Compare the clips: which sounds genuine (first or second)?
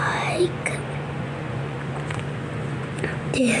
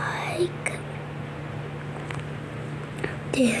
second